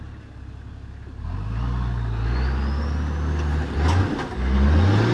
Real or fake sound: real